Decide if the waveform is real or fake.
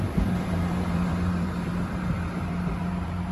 fake